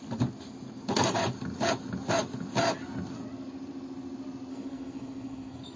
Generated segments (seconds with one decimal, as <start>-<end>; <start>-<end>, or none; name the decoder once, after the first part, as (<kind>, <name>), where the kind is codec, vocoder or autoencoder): 4.5-5.8 (codec, SNAC)